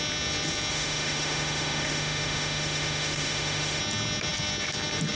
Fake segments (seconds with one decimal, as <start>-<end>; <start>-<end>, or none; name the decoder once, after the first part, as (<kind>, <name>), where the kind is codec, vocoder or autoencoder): 0.7-3.8 (autoencoder, DAC-VAE)